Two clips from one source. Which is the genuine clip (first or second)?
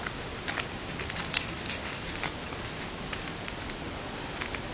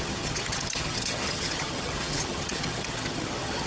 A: first